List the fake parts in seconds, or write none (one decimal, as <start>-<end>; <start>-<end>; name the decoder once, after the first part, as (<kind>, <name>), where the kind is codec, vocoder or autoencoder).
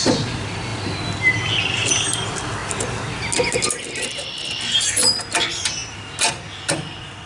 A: none